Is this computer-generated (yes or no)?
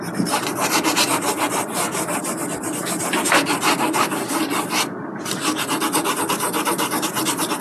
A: yes